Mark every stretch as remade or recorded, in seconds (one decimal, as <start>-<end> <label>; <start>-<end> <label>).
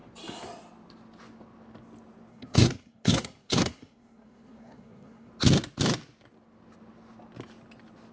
0.0-2.3 recorded; 2.3-5.3 remade; 5.3-8.1 recorded